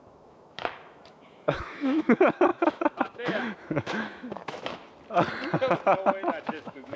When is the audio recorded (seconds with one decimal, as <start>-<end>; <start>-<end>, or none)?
4.8-6.5